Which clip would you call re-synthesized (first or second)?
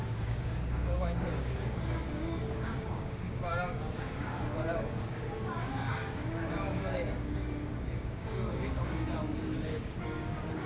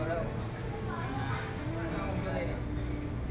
first